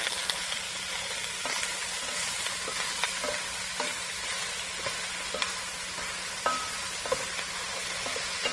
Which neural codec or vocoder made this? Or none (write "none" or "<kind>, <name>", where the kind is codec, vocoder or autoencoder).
none